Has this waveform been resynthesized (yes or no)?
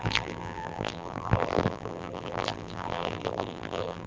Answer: yes